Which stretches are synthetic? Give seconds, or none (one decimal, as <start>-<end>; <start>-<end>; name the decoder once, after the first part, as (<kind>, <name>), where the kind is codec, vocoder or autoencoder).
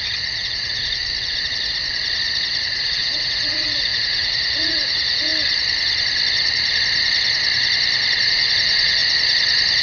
0.0-1.0 (vocoder, Vocos); 2.6-5.3; 8.3-9.0